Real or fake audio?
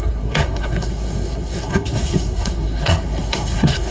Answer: fake